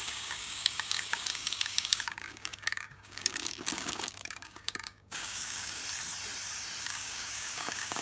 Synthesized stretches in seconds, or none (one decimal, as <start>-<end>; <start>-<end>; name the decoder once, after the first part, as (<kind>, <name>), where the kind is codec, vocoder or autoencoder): 0.0-5.8 (codec, DAC); 6.8-8.0